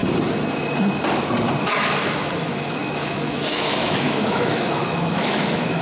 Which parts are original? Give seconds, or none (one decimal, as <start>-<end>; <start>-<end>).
0.0-1.6